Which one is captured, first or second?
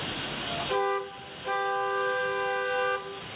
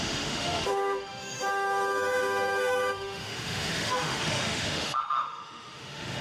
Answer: first